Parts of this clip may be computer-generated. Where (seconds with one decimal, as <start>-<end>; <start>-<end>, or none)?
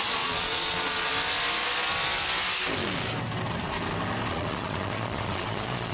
0.0-1.1; 4.3-5.9